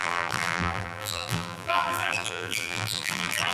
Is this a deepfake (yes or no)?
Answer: yes